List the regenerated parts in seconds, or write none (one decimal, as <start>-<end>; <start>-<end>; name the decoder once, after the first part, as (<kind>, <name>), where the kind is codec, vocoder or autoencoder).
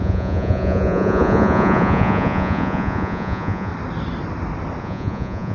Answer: 0.0-3.7 (vocoder, Vocos); 4.8-5.5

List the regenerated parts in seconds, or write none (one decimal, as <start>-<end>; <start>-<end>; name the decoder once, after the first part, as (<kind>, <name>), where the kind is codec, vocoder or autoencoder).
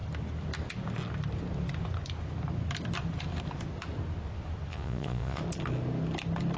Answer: 4.7-5.4 (vocoder, Vocos)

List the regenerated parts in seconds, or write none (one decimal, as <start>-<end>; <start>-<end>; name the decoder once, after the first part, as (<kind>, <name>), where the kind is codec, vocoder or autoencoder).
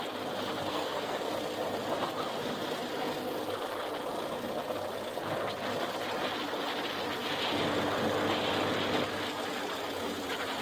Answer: 0.6-1.3 (codec, SNAC)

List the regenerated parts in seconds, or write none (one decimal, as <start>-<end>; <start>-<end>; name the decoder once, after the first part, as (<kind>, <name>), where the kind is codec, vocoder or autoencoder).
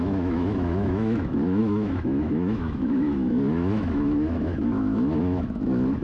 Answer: 0.0-6.0 (autoencoder, DAC-VAE)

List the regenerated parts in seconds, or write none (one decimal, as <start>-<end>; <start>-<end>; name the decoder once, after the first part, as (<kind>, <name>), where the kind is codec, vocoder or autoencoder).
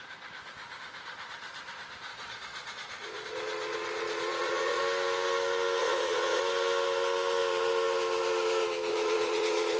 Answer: 2.1-4.8 (vocoder, Vocos); 5.8-6.4; 8.9-9.8